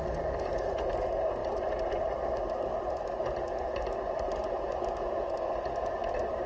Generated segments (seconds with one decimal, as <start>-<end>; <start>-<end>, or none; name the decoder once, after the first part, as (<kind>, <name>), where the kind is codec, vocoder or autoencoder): none